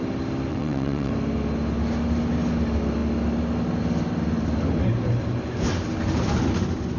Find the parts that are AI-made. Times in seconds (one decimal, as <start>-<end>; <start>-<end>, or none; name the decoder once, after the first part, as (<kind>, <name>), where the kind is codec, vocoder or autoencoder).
0.5-1.1 (vocoder, WaveNeXt)